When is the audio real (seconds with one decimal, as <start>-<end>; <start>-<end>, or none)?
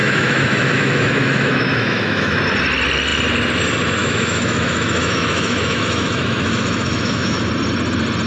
2.4-4.0; 7.5-8.3